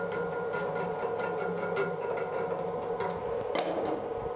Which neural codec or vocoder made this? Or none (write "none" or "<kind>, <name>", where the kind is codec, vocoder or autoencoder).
none